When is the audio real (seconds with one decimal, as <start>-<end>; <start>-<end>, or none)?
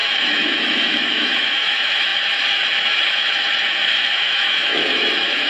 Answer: none